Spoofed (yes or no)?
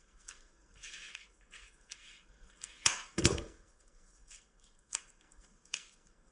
yes